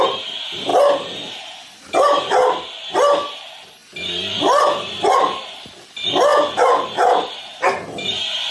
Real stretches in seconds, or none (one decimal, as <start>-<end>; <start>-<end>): 0.0-8.5